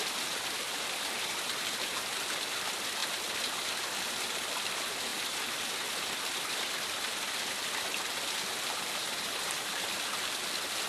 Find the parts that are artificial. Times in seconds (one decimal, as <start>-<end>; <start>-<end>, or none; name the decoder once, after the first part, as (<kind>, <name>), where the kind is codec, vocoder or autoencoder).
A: none